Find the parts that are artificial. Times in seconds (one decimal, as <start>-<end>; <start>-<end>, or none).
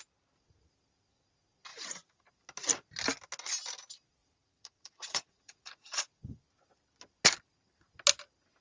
1.7-2.2; 4.2-6.0